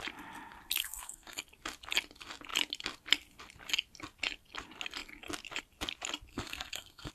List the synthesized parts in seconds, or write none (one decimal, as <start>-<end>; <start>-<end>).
0.8-1.4; 6.3-7.1